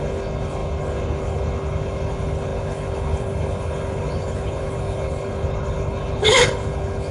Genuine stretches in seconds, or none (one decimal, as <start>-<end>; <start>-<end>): none